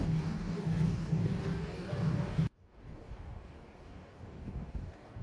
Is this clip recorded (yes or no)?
no